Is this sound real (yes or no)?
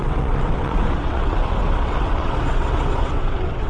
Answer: no